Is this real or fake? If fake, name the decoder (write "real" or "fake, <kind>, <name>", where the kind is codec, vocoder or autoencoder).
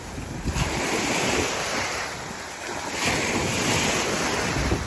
real